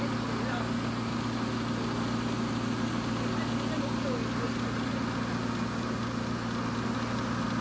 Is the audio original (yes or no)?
yes